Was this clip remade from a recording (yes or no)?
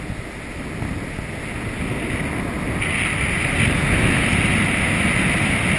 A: no